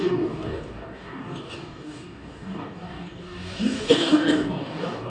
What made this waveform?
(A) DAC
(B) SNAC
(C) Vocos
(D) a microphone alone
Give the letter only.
A